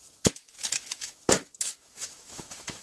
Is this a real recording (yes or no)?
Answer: no